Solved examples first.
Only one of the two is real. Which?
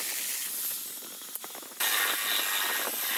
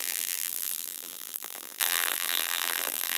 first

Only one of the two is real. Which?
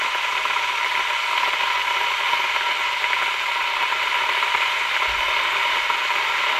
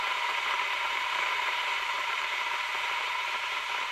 first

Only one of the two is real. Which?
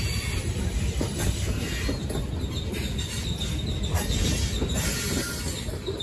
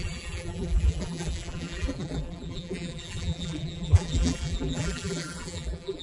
first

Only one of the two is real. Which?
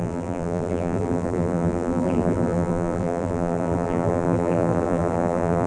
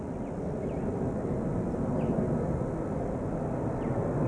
second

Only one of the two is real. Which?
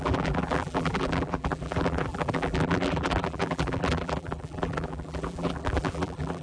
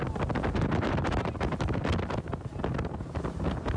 second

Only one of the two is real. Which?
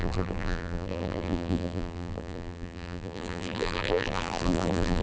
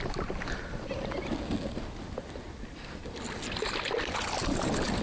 second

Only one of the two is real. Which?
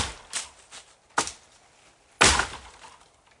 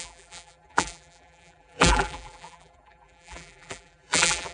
first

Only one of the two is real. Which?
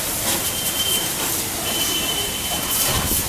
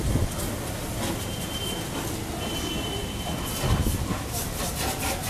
second